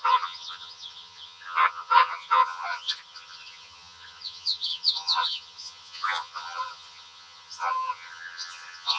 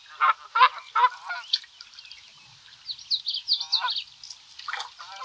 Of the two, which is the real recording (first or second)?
second